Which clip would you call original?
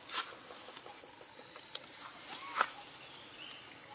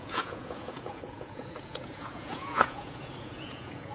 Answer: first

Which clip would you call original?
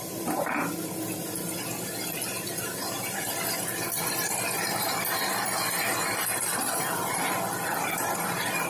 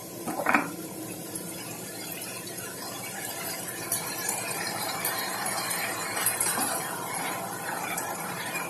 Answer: first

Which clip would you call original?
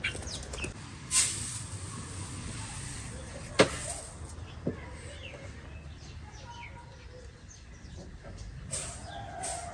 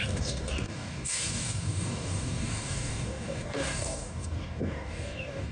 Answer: first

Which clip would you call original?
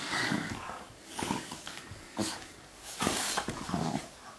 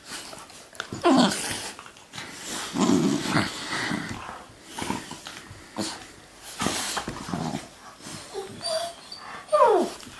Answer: second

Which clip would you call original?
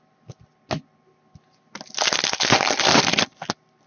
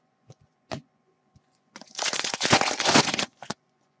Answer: first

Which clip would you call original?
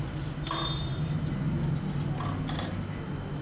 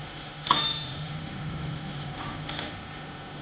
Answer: first